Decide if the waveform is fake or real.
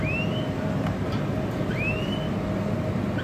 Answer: real